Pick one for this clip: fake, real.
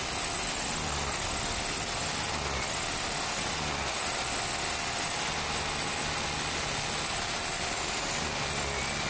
real